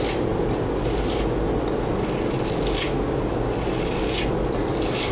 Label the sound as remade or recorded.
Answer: recorded